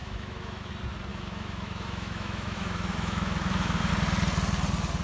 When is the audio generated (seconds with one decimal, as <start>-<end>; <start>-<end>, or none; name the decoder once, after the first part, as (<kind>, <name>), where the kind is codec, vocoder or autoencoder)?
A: 0.0-0.7 (autoencoder, DAC-VAE); 1.1-3.9